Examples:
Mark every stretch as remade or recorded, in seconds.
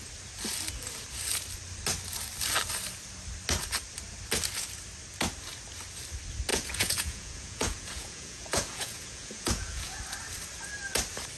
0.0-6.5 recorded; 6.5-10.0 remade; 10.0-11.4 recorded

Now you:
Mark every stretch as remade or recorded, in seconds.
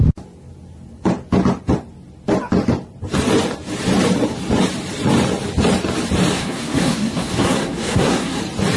0.0-6.3 recorded; 6.3-8.4 remade; 8.4-8.8 recorded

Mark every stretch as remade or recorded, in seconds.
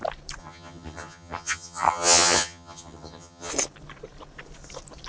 0.0-0.4 recorded; 0.4-3.5 remade; 3.5-5.1 recorded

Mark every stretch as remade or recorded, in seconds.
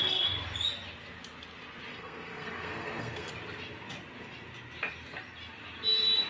0.0-1.9 recorded; 1.9-3.3 remade; 3.3-6.3 recorded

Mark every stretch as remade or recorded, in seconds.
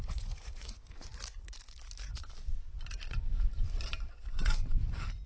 0.0-1.1 remade; 1.1-4.3 recorded; 4.3-5.3 remade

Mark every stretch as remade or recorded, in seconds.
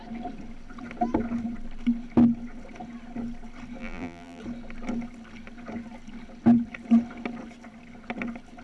0.0-3.8 recorded; 3.8-4.4 remade; 4.4-8.6 recorded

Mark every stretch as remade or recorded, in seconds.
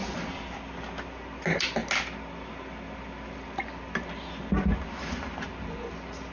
0.0-6.3 recorded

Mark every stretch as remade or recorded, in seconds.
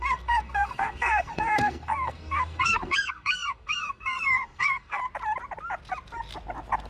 0.0-5.0 remade; 5.0-6.9 recorded